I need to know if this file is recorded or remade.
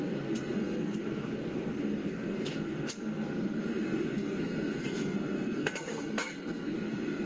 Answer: remade